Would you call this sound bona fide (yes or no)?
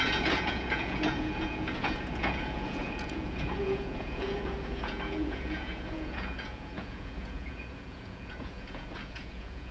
no